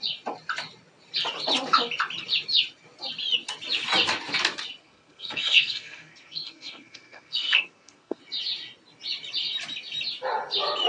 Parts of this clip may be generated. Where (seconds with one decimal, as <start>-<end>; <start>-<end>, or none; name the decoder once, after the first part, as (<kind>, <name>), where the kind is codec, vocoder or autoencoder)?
4.8-8.2 (codec, SNAC)